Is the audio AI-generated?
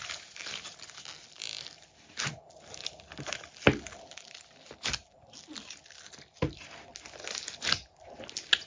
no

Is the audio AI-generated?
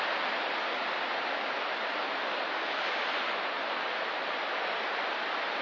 no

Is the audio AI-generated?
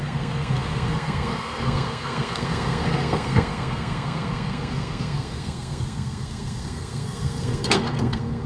yes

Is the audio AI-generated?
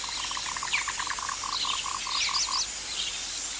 no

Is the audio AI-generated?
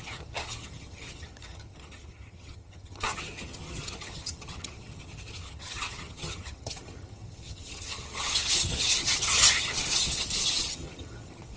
yes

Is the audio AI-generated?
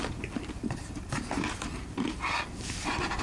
yes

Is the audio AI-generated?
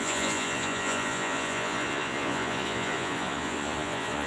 yes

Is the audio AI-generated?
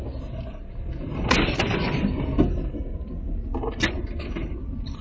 no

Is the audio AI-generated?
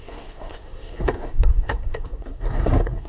yes